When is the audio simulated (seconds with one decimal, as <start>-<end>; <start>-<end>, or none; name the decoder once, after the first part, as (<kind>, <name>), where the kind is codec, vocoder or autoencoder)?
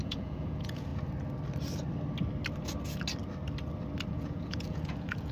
0.0-0.9 (vocoder, Vocos); 4.1-5.3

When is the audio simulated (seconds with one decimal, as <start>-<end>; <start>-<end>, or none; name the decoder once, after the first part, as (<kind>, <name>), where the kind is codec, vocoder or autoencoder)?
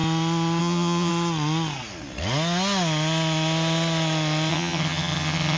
0.6-1.1 (vocoder, HiFi-GAN); 4.5-5.6